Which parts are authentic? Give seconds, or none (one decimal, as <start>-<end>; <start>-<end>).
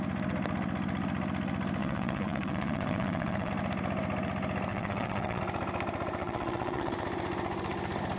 0.0-1.8; 3.5-4.7; 5.4-6.2; 6.9-8.2